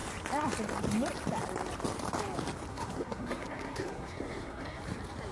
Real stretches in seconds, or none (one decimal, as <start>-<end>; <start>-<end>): 0.0-2.7; 4.8-5.3